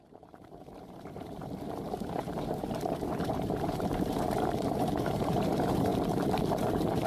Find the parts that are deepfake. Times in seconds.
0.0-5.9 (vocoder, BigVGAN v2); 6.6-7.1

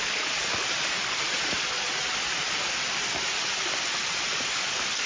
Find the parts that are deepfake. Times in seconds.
0.4-1.6 (vocoder, BigVGAN v2)

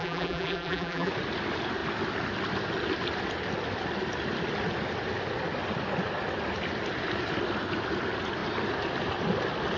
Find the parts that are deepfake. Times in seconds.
0.0-1.1 (vocoder, BigVGAN v2)

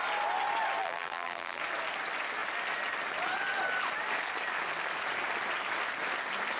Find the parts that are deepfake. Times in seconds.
0.8-1.6 (vocoder, BigVGAN v2)

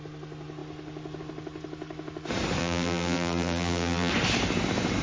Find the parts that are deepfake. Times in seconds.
2.6-4.1 (vocoder, BigVGAN v2)

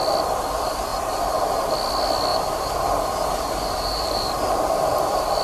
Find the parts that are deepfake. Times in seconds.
0.9-1.7 (vocoder, BigVGAN v2); 2.3-4.7